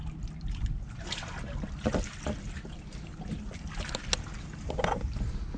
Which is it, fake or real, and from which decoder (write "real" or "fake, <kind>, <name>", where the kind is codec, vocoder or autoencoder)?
real